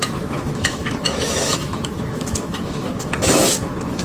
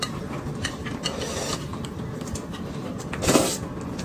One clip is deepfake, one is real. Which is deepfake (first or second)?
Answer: first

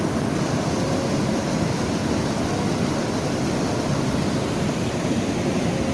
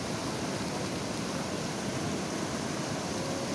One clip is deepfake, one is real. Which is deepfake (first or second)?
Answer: second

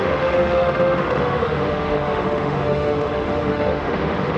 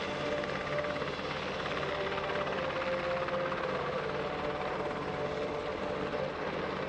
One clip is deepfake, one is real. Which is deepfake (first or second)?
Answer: first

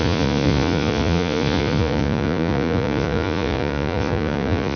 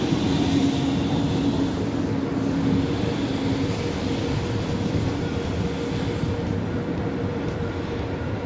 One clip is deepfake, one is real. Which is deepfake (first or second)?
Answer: first